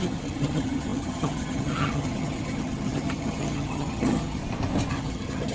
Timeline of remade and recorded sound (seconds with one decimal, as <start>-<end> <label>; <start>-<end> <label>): 0.0-4.4 remade; 4.4-4.9 recorded; 4.9-5.5 remade